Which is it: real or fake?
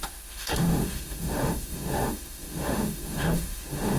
fake